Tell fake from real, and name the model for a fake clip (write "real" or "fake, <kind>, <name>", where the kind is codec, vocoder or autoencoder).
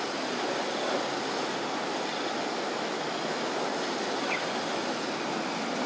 real